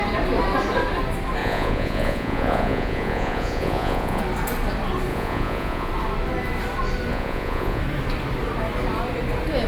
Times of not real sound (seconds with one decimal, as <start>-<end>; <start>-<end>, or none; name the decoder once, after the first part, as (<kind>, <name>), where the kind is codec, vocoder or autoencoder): 1.4-4.2 (vocoder, Vocos); 5.1-5.9; 7.1-7.8